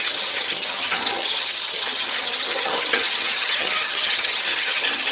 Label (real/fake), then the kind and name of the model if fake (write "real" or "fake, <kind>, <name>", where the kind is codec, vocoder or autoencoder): fake, vocoder, HiFi-GAN